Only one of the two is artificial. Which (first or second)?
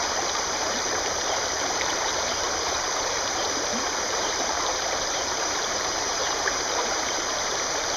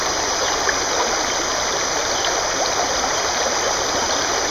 first